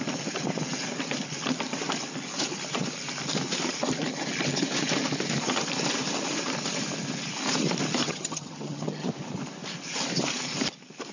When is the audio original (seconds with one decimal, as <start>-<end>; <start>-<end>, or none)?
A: 0.0-8.0; 9.1-11.1